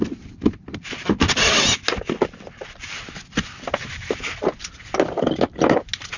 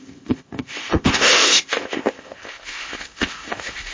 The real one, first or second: first